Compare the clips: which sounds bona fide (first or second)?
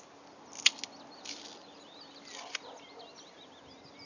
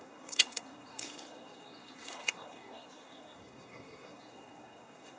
first